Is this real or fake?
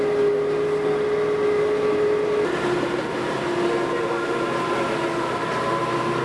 real